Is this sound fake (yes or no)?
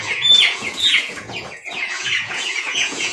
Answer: yes